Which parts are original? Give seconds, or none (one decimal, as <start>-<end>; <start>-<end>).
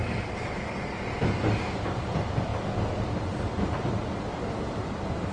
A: 0.0-0.5; 2.5-3.0